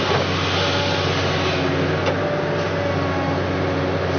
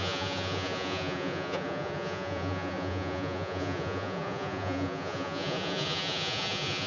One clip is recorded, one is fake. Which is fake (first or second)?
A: second